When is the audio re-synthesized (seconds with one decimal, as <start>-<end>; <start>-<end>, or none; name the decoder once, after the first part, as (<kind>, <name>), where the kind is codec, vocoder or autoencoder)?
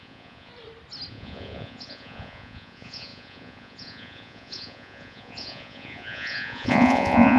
0.0-0.5 (vocoder, Vocos); 1.1-7.4